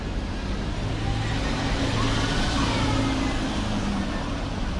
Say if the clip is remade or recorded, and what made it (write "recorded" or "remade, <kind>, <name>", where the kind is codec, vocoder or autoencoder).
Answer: recorded